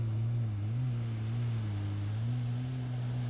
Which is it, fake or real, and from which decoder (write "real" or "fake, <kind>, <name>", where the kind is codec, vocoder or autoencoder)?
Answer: real